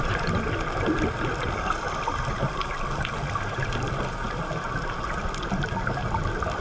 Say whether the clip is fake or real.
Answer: real